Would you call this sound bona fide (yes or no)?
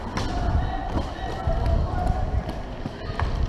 yes